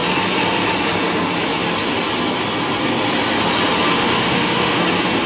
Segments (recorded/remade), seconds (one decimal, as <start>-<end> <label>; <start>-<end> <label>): 0.0-3.9 recorded; 3.9-4.8 remade; 4.8-5.3 recorded